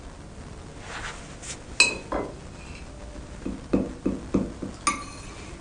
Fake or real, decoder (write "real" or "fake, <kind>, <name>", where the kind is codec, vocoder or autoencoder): real